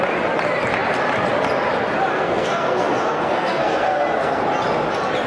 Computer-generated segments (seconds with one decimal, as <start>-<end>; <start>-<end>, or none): 2.1-4.4